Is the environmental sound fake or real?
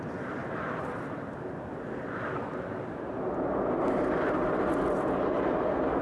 real